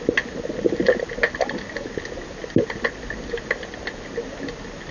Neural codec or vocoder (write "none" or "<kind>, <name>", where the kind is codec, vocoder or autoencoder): none